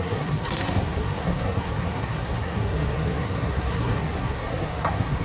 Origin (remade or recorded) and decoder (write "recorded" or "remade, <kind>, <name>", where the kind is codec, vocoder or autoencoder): remade, codec, SNAC